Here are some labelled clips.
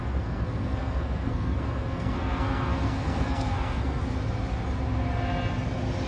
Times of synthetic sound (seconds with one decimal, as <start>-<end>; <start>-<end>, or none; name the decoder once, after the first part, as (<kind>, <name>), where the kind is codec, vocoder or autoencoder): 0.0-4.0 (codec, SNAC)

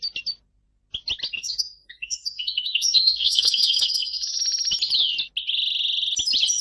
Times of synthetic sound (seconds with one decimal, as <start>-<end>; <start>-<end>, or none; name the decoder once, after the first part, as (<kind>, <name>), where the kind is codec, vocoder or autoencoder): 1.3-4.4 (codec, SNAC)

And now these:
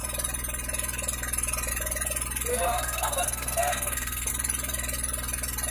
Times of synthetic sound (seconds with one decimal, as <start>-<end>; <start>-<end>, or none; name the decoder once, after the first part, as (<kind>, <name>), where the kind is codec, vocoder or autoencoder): 2.5-4.3 (codec, SNAC)